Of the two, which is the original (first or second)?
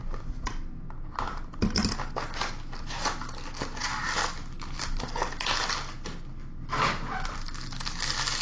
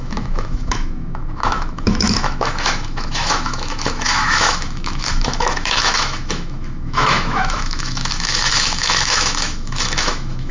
first